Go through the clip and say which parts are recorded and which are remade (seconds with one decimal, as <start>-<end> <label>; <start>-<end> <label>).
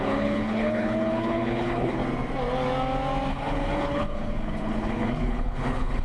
0.0-2.0 remade; 2.0-3.3 recorded; 3.3-6.0 remade